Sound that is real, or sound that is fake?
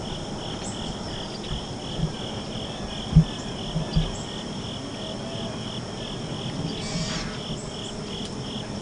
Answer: real